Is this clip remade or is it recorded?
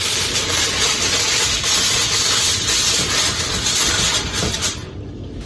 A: recorded